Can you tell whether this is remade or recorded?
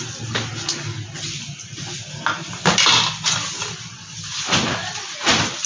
recorded